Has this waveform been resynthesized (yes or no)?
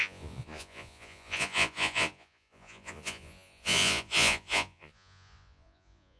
yes